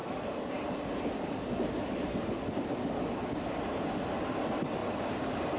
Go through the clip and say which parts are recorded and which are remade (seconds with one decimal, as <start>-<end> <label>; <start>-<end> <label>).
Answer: 0.0-5.6 recorded